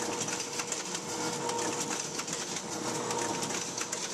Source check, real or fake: real